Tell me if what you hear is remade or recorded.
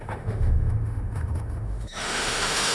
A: remade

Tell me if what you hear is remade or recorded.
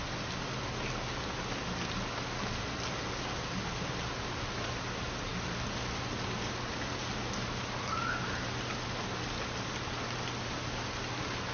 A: recorded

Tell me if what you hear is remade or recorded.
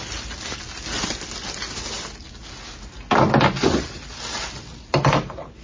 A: recorded